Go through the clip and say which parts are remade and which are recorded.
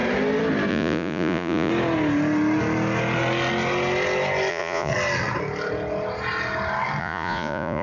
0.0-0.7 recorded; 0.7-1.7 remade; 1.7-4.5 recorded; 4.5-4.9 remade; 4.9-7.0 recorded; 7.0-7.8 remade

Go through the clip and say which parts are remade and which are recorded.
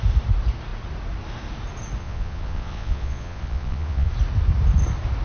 0.0-2.0 recorded; 2.0-4.1 remade; 4.1-5.2 recorded